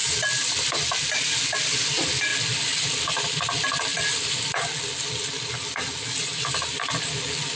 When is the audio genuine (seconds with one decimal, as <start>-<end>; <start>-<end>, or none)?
0.7-3.9; 4.5-7.6